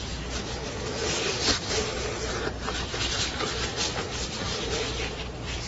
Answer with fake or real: real